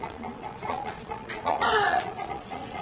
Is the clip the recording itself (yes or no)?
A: no